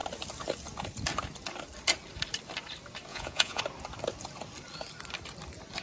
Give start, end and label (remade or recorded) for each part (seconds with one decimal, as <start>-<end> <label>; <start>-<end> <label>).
0.0-3.1 recorded; 3.1-3.6 remade; 3.6-5.8 recorded